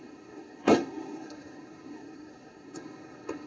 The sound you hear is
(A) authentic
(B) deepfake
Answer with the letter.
B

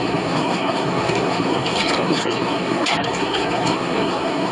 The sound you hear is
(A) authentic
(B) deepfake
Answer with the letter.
B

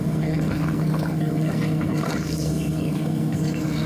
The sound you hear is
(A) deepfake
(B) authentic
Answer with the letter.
A